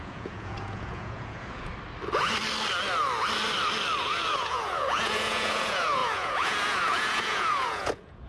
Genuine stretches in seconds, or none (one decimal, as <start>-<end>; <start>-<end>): 1.7-4.0